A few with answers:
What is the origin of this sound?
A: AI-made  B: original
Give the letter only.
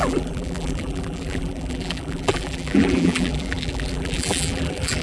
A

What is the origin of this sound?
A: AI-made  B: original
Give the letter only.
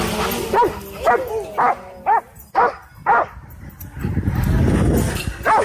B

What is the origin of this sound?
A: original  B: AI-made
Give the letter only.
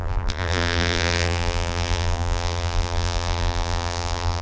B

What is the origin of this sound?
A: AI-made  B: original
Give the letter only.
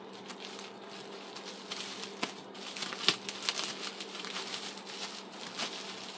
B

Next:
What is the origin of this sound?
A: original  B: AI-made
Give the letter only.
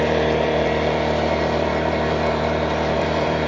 B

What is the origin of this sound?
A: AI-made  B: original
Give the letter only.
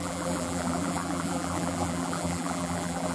A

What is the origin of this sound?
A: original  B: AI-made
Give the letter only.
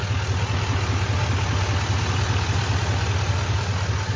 A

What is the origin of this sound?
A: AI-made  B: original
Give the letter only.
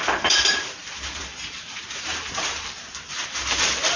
A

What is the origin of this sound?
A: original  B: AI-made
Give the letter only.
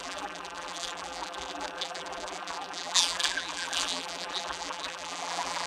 B